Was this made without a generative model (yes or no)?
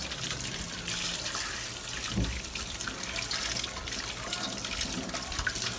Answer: yes